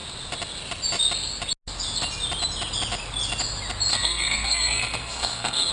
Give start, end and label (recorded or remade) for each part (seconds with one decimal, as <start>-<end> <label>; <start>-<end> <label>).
0.0-3.9 recorded; 3.9-5.7 remade